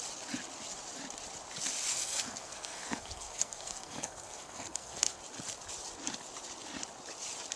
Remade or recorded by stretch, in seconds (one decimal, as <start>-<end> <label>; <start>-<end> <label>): 0.0-1.9 recorded; 1.9-5.2 remade; 5.2-7.6 recorded